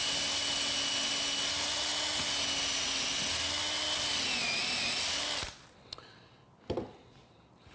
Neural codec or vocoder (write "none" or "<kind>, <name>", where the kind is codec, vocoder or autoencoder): none